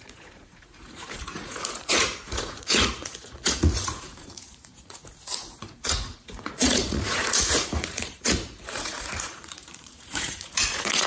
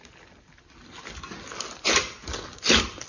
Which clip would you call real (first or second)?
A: second